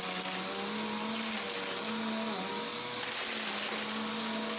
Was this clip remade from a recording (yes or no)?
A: no